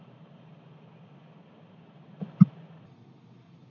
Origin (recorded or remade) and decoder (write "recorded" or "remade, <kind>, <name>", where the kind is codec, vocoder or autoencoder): recorded